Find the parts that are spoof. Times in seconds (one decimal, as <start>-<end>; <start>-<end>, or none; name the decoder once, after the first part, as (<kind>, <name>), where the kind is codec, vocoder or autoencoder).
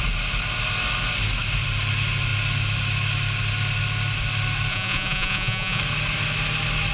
4.7-5.8 (vocoder, Vocos)